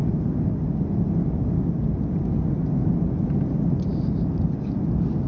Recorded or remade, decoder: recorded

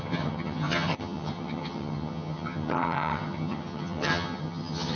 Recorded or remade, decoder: remade, vocoder, HiFi-GAN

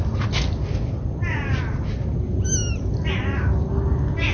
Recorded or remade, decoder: recorded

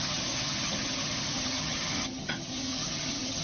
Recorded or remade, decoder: remade, vocoder, HiFi-GAN